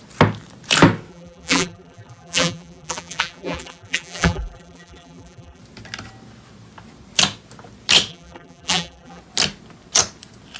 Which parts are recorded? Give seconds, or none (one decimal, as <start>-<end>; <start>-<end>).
0.0-1.1; 5.6-8.1; 9.2-10.6